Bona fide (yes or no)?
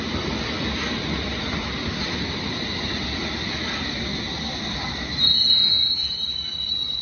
yes